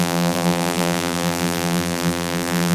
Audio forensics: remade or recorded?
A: remade